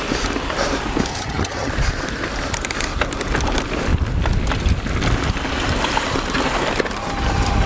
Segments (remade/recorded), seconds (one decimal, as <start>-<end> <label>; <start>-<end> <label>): 0.0-1.1 recorded; 1.1-1.7 remade; 1.7-7.7 recorded